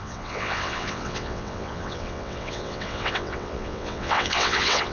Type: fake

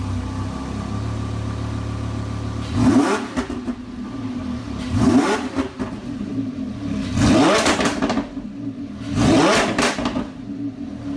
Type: real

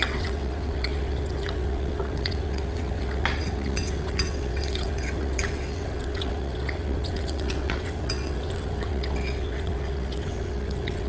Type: fake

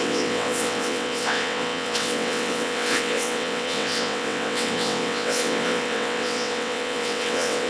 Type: fake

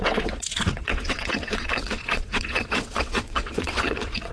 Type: fake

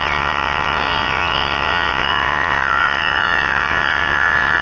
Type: fake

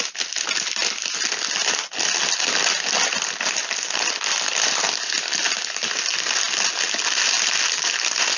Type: real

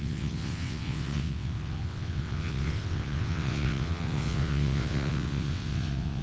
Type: fake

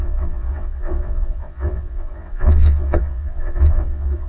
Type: fake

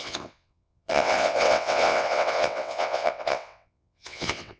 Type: fake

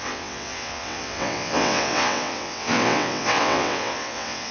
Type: fake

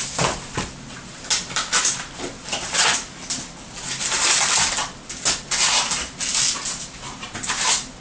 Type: real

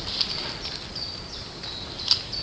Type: real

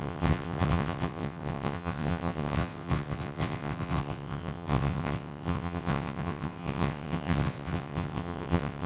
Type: fake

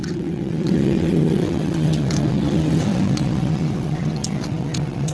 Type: fake